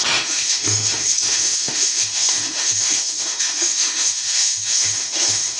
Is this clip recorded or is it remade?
remade